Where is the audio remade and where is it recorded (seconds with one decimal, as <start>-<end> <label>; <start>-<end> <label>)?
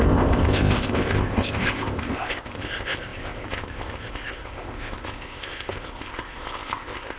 0.0-7.2 remade